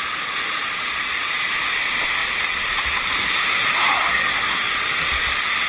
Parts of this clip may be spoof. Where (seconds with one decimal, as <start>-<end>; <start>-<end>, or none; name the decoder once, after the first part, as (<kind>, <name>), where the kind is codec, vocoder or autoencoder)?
none